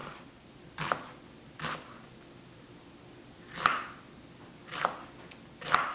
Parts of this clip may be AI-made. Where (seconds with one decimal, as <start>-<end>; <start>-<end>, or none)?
none